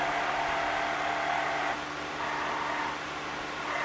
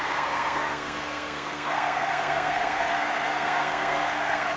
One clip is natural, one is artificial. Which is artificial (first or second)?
second